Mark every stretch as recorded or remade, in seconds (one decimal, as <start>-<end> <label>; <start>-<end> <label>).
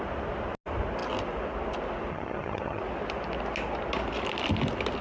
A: 0.0-2.1 recorded; 2.1-2.8 remade; 2.8-5.0 recorded